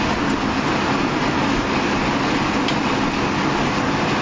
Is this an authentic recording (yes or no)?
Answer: yes